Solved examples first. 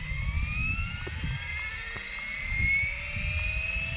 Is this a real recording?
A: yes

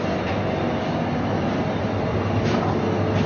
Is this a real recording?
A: yes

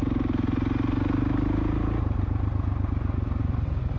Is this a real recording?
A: yes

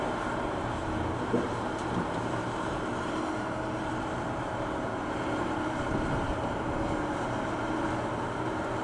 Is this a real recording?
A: no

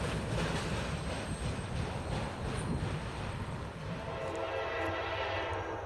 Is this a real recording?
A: no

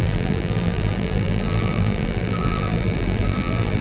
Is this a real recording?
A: no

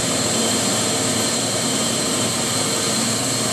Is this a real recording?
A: no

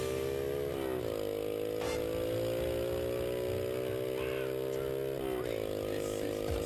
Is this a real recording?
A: yes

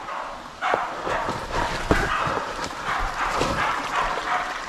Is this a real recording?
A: no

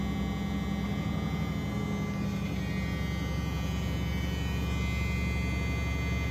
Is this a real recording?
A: yes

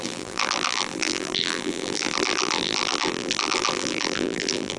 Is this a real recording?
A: no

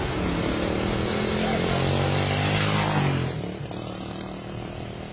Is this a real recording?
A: yes